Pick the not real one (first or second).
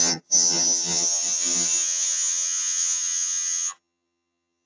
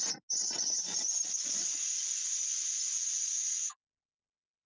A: first